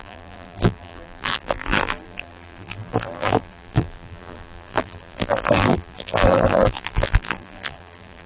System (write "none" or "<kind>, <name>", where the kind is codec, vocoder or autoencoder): vocoder, BigVGAN v2